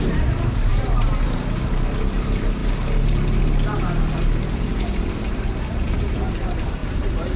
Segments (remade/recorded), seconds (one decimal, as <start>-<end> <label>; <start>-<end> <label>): 0.0-7.4 remade